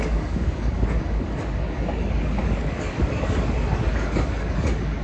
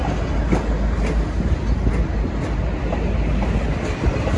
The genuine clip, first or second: second